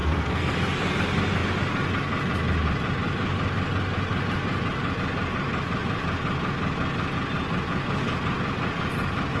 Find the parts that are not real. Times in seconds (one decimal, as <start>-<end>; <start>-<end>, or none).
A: 0.0-0.5